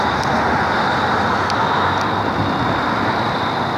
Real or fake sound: real